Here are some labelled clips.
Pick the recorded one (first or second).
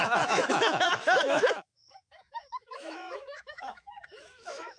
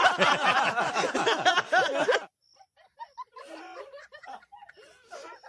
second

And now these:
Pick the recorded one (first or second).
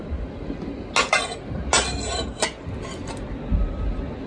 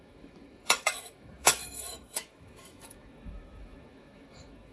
first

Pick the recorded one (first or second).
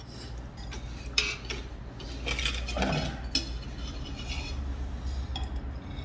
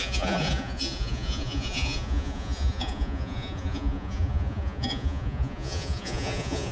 first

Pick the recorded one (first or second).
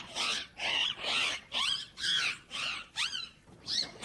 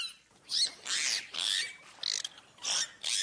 second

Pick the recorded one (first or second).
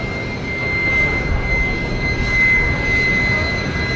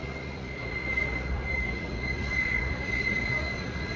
first